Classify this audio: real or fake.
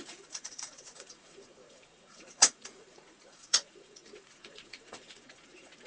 fake